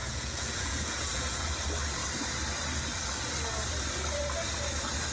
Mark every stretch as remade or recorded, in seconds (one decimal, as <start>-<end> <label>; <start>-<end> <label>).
0.0-1.5 remade; 1.5-5.1 recorded